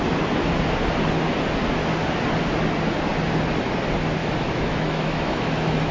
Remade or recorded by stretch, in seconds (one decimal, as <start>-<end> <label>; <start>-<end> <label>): 0.0-4.2 recorded; 4.2-5.9 remade